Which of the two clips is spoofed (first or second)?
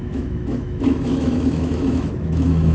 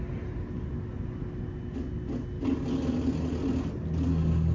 first